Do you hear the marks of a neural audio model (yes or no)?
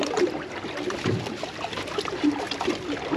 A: no